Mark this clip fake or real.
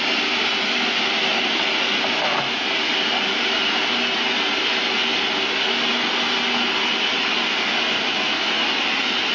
real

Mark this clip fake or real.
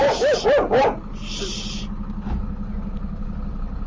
real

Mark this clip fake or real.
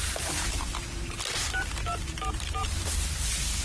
fake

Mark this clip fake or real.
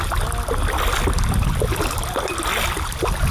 real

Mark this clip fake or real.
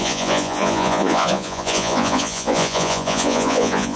fake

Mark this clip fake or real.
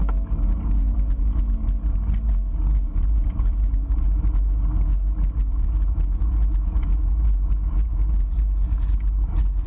real